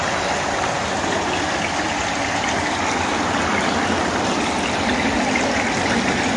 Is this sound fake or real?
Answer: real